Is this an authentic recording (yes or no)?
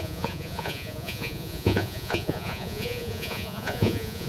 no